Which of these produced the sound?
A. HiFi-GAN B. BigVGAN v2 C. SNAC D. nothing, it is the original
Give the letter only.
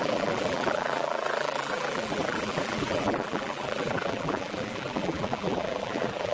B